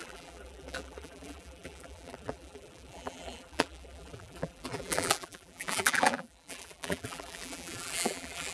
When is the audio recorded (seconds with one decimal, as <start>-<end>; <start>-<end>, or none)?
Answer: none